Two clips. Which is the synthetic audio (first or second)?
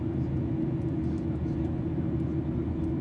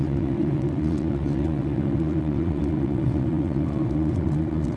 second